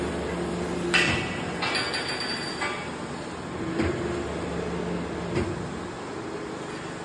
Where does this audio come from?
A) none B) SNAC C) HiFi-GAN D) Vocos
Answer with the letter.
A